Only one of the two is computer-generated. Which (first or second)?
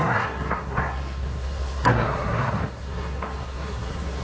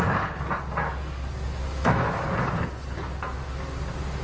first